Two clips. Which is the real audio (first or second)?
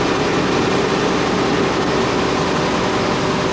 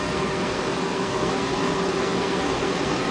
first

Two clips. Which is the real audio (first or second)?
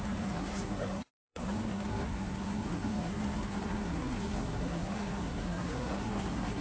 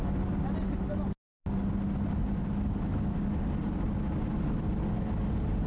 second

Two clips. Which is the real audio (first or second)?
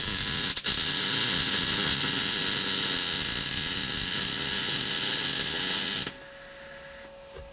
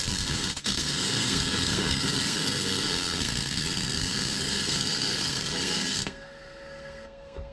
first